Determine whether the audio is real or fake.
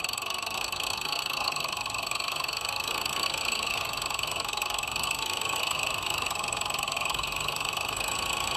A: fake